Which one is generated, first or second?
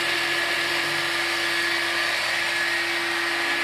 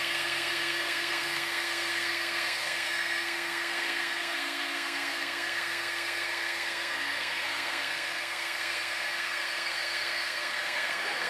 second